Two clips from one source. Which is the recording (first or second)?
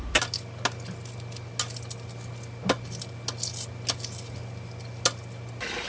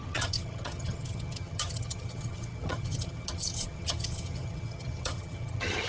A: first